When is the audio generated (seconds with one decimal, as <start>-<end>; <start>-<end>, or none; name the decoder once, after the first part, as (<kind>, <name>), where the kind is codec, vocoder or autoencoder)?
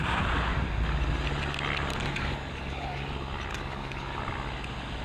1.9-3.1 (codec, DAC); 3.5-4.2